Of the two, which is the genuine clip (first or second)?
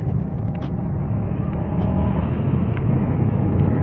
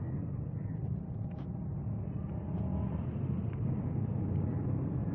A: second